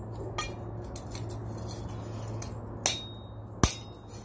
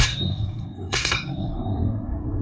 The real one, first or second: first